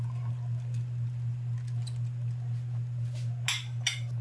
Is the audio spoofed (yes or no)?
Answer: no